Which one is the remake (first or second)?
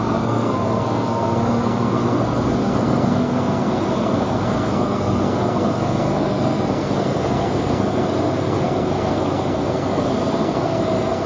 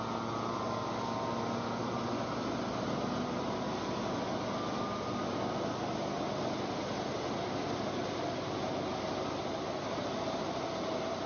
first